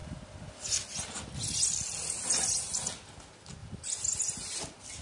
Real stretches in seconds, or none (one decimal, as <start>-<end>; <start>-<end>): 0.0-5.0